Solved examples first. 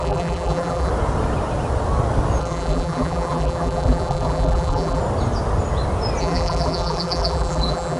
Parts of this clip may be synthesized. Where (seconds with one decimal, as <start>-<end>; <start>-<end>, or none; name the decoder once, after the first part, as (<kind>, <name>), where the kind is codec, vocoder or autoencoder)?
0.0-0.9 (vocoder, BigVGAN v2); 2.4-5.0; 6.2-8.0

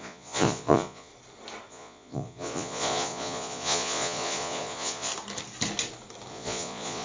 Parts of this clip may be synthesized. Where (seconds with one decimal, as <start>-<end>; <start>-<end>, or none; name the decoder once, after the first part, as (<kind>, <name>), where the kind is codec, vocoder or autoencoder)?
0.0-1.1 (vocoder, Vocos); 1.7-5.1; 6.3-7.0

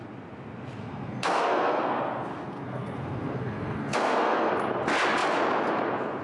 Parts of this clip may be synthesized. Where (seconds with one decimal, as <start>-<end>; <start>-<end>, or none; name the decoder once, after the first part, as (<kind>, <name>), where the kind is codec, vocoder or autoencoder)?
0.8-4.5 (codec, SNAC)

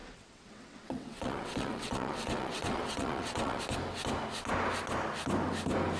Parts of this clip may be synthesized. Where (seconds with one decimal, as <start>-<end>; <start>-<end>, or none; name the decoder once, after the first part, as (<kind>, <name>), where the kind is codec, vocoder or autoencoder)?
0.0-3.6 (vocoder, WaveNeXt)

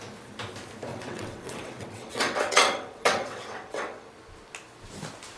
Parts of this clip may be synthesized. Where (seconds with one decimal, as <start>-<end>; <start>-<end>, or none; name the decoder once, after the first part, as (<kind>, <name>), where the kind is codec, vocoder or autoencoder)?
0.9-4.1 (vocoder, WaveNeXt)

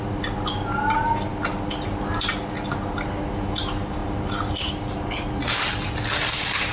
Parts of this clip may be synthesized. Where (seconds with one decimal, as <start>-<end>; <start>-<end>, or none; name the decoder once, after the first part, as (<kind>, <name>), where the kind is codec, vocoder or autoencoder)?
none

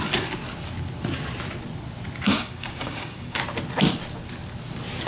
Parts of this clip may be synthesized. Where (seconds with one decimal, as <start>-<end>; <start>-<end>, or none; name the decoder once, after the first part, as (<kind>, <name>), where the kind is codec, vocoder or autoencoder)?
2.3-3.4 (codec, DAC)